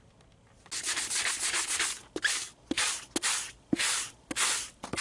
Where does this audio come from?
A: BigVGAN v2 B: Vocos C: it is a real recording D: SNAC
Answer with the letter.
C